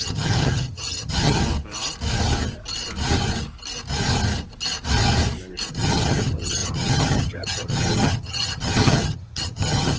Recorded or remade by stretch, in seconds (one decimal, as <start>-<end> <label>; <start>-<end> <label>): 0.0-1.4 remade; 1.4-5.7 recorded; 5.7-10.0 remade